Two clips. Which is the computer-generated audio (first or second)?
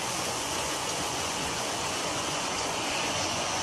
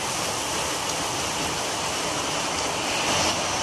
first